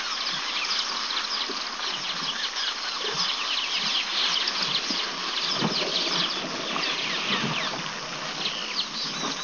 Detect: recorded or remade recorded